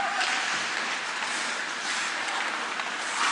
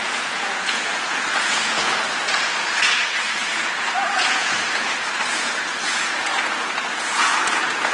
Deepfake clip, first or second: second